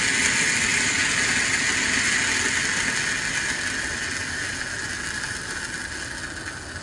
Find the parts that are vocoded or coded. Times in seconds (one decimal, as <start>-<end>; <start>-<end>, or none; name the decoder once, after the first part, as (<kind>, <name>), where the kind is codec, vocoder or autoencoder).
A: none